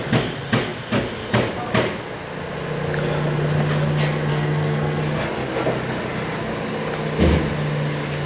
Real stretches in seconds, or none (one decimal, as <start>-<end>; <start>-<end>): 0.0-4.3; 5.0-8.3